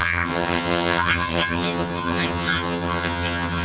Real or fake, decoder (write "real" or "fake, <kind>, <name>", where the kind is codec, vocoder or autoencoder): fake, vocoder, HiFi-GAN